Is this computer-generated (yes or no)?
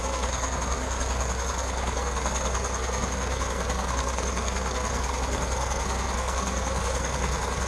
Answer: yes